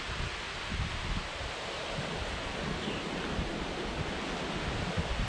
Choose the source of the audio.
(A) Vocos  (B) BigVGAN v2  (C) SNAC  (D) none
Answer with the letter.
D